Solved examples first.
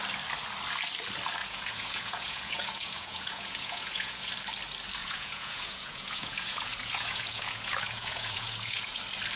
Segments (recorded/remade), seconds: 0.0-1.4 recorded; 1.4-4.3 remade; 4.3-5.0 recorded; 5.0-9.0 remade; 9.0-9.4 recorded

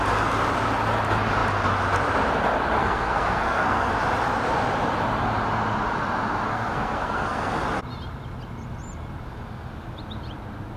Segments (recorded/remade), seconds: 0.0-2.8 recorded; 2.8-3.9 remade; 3.9-6.5 recorded; 6.5-7.5 remade; 7.5-10.8 recorded

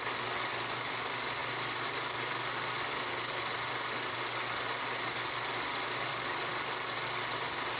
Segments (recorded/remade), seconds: 0.0-7.8 recorded

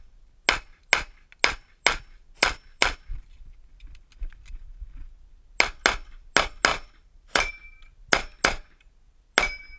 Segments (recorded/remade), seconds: 0.0-6.7 recorded; 6.7-7.5 remade; 7.5-9.8 recorded

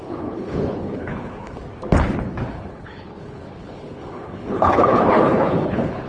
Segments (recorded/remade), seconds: 0.0-1.6 remade; 1.6-2.5 recorded; 2.5-6.1 remade